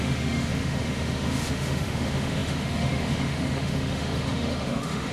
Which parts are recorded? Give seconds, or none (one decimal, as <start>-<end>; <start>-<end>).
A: none